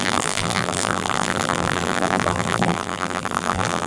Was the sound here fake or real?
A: fake